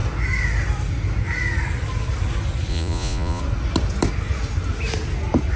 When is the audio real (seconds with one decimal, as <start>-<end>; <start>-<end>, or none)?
0.0-2.7; 3.4-5.6